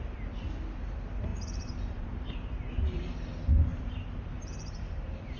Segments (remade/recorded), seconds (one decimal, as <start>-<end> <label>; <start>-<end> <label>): 0.0-1.3 recorded; 1.3-2.5 remade; 2.5-3.7 recorded; 3.7-5.4 remade